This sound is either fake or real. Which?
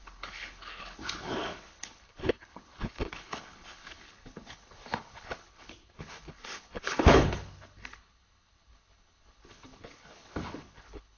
fake